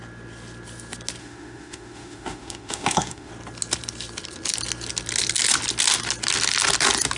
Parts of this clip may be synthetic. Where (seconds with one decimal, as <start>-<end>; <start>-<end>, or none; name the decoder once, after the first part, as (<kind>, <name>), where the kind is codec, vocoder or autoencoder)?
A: 1.2-3.3 (autoencoder, DAC-VAE)